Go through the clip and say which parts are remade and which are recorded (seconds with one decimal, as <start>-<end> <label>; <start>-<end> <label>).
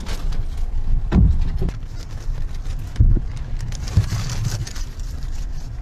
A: 0.0-4.6 recorded; 4.6-5.8 remade